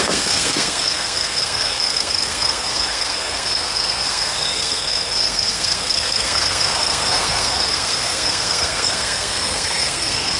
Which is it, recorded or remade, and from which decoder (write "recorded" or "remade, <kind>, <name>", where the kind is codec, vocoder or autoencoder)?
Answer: remade, codec, SNAC